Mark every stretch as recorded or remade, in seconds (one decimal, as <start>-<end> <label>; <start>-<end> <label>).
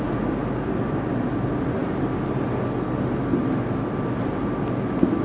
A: 0.0-5.2 recorded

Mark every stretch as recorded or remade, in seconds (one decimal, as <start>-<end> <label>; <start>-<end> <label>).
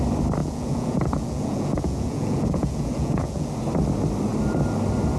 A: 0.0-0.4 recorded; 0.4-3.5 remade; 3.5-5.2 recorded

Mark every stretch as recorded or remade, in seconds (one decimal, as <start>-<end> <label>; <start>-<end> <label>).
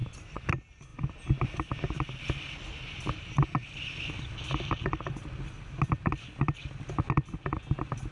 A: 0.0-0.5 remade; 0.5-8.1 recorded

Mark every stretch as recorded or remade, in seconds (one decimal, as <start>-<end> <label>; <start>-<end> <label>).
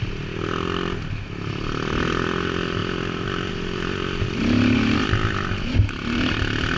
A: 0.0-6.8 recorded